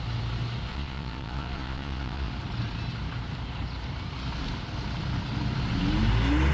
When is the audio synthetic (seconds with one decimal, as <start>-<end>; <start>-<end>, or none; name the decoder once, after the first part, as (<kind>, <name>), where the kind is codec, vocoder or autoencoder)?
0.7-2.3 (vocoder, Vocos)